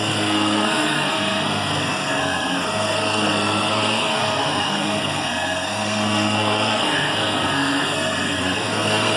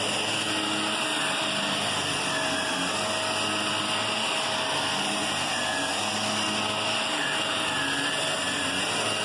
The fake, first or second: first